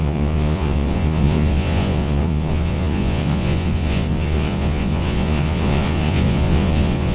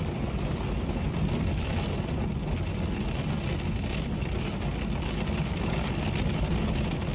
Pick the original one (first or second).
second